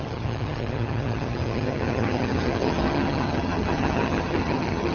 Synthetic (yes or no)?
yes